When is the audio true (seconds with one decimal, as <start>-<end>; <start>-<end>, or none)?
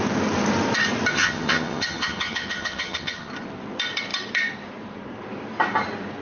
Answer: 0.0-1.1; 3.3-6.2